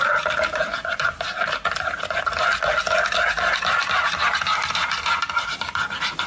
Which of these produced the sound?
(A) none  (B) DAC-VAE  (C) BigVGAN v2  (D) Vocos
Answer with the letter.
A